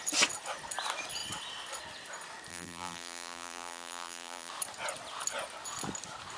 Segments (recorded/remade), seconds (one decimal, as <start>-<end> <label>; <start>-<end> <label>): 0.0-2.5 recorded; 2.5-4.5 remade; 4.5-6.4 recorded